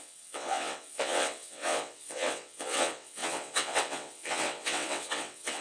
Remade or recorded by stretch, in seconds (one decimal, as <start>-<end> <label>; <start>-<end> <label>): 0.0-5.6 remade